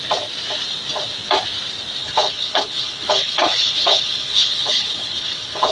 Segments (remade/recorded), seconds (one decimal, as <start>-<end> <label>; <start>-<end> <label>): 0.0-2.0 recorded; 2.0-5.7 remade